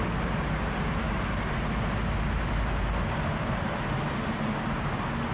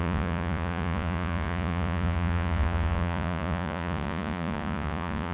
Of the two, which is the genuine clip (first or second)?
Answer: first